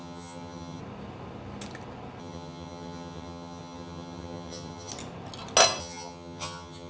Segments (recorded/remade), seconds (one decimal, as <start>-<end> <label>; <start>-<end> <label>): 0.0-0.8 remade; 0.8-2.2 recorded; 2.2-4.9 remade; 4.9-5.8 recorded; 5.8-6.9 remade